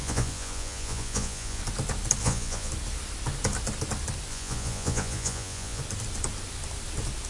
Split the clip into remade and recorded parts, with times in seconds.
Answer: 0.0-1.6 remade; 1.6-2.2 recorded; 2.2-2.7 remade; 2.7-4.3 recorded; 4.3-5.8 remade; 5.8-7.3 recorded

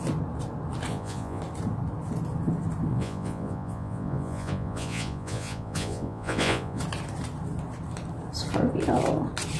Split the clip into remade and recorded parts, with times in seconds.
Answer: 0.0-0.9 recorded; 0.9-1.4 remade; 1.4-2.9 recorded; 2.9-6.8 remade; 6.8-9.6 recorded

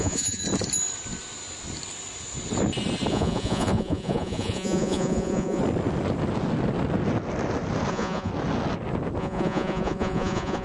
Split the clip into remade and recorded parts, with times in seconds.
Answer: 0.0-0.4 remade; 0.4-3.1 recorded; 3.1-5.6 remade; 5.6-7.9 recorded; 7.9-8.3 remade; 8.3-9.2 recorded; 9.2-10.6 remade

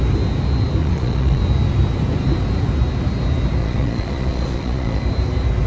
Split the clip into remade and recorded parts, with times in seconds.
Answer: 0.0-0.8 recorded; 0.8-1.4 remade; 1.4-3.6 recorded; 3.6-5.0 remade; 5.0-5.7 recorded

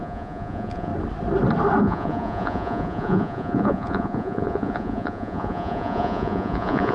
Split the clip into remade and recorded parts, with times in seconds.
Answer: 0.0-0.9 remade; 0.9-1.8 recorded; 1.8-6.9 remade

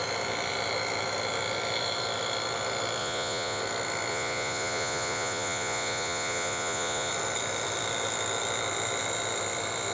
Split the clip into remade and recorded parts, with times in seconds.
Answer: 0.0-3.0 recorded; 3.0-3.6 remade; 3.6-4.1 recorded; 4.1-7.1 remade; 7.1-9.9 recorded

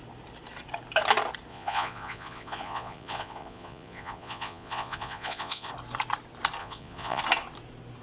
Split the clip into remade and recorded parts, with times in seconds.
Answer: 0.0-1.5 recorded; 1.5-5.7 remade; 5.7-6.6 recorded; 6.6-7.2 remade; 7.2-8.0 recorded